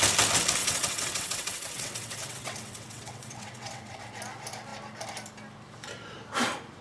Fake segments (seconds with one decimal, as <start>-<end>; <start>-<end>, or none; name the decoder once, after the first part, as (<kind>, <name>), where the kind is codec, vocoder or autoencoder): 0.6-4.0 (vocoder, WaveNeXt)

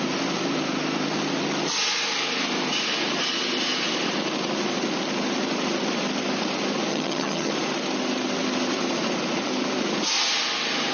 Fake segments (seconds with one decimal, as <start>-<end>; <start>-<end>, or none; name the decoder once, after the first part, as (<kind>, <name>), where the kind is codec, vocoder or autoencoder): 6.9-7.5 (vocoder, HiFi-GAN)

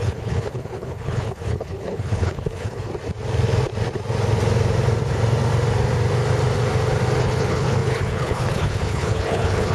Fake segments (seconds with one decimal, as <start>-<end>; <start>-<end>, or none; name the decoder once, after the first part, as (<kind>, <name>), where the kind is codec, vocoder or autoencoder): 0.0-2.9 (codec, HILCodec); 7.2-9.7